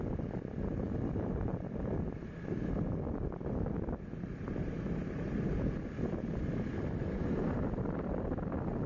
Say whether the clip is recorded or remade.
recorded